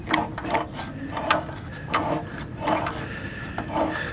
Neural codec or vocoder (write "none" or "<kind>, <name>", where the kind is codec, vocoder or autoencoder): none